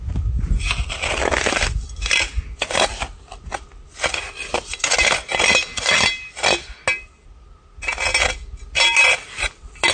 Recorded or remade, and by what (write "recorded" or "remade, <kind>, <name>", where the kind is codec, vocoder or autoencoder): recorded